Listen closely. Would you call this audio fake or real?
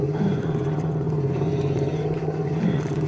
fake